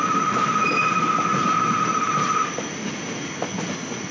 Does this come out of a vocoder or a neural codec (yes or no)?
no